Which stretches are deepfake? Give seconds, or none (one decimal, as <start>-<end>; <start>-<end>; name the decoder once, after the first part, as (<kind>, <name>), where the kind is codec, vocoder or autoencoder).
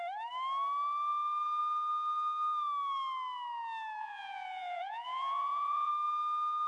4.0-5.9 (vocoder, Vocos)